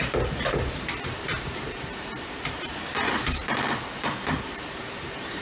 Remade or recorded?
remade